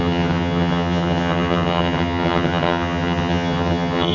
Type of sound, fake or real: fake